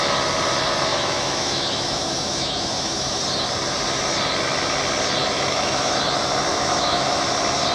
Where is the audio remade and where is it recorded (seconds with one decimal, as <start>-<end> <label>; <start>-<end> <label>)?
0.0-0.9 recorded; 0.9-3.2 remade; 3.2-5.2 recorded; 5.2-6.0 remade; 6.0-6.5 recorded; 6.5-7.3 remade; 7.3-7.7 recorded